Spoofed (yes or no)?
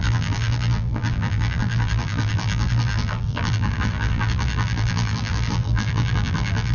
yes